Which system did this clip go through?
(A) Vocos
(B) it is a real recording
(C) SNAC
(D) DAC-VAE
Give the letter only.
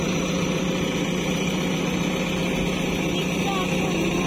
B